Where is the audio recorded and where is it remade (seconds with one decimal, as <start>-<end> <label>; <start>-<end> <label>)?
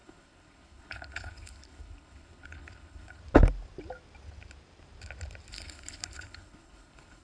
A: 0.0-3.2 remade; 3.2-5.5 recorded; 5.5-7.2 remade